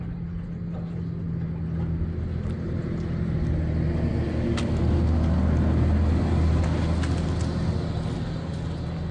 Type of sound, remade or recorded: recorded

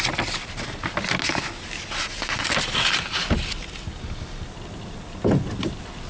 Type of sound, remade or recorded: recorded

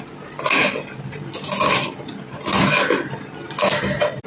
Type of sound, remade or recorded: recorded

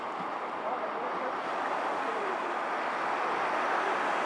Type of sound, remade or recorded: recorded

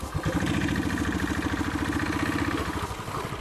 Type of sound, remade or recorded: recorded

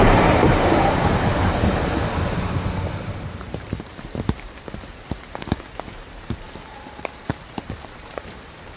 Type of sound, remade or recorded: remade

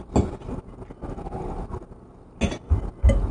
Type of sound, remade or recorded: recorded